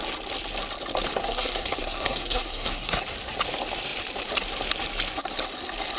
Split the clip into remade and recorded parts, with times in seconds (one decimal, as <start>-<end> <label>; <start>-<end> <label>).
0.0-1.2 recorded; 1.2-3.0 remade; 3.0-6.0 recorded